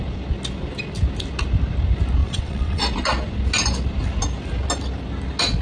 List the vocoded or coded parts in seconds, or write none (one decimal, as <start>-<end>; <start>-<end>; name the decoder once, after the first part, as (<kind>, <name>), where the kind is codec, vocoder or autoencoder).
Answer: 2.2-2.8 (vocoder, WaveNeXt)